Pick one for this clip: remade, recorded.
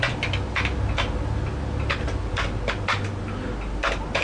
recorded